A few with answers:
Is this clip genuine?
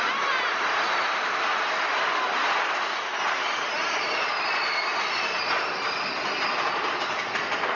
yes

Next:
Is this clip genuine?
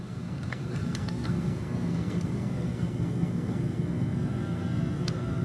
no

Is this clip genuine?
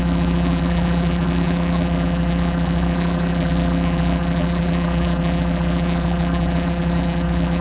no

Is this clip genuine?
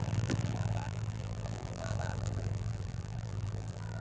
no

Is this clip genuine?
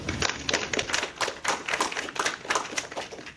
yes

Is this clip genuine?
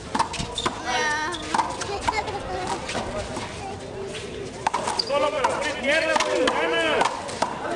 yes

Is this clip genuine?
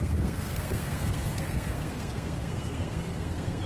no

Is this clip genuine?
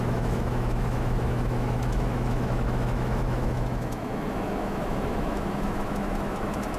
no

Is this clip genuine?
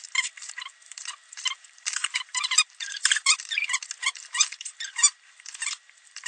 no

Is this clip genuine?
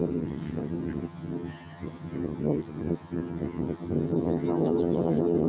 no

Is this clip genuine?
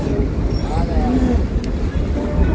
yes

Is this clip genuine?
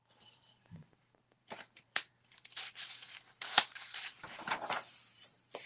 no